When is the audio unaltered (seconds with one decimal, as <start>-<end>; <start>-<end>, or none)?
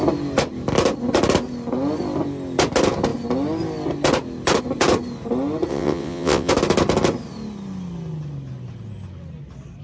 0.0-5.7; 6.5-9.8